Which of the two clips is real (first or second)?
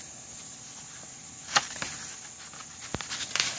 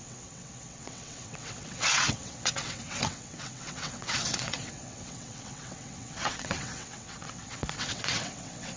first